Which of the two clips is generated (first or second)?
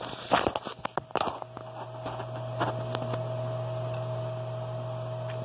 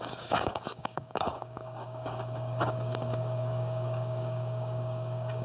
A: second